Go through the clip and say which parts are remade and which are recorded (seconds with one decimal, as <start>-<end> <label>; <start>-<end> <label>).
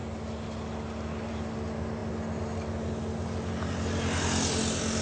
0.0-5.0 recorded